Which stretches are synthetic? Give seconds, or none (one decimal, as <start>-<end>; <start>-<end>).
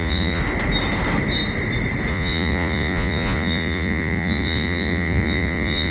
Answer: 0.0-0.4; 2.1-5.9